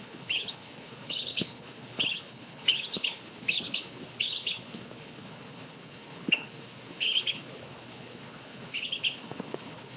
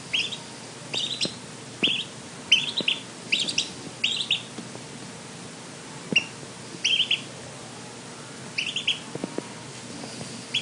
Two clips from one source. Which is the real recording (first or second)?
second